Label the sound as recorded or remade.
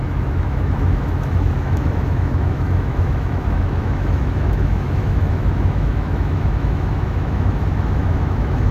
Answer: remade